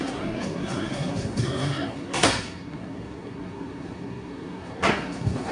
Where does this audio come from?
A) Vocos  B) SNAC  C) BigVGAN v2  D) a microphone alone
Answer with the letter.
B